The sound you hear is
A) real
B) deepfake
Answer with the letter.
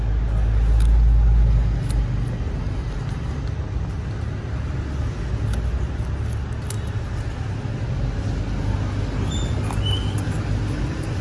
A